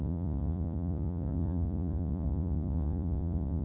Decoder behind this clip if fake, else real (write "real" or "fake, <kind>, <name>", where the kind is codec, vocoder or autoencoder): fake, vocoder, Vocos